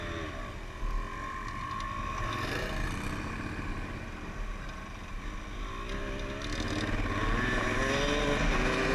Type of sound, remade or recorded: recorded